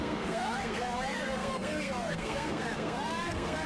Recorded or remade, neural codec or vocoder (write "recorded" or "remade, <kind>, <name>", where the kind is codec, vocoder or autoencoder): remade, codec, SNAC